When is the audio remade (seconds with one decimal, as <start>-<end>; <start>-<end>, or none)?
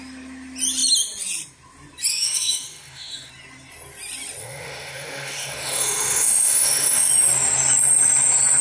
2.1-3.3; 4.4-7.1